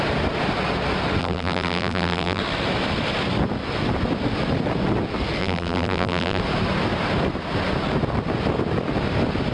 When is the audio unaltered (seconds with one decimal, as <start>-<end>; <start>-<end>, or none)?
0.0-1.2; 2.4-5.4; 6.4-9.5